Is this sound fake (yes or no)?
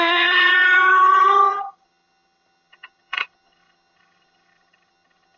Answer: yes